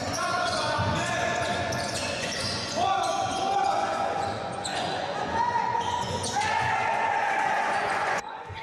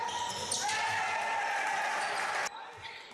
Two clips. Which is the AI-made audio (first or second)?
first